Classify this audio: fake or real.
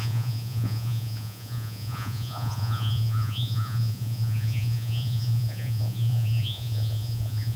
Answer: fake